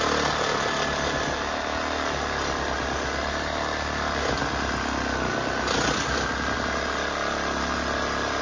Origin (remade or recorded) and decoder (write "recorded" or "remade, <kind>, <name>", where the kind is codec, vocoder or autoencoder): recorded